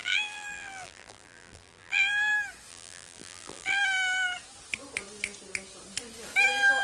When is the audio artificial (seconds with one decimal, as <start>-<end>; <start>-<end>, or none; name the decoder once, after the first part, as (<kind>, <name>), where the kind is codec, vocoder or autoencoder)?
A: 0.0-2.3 (vocoder, BigVGAN v2); 2.7-3.8